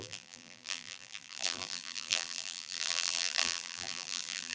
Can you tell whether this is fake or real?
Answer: fake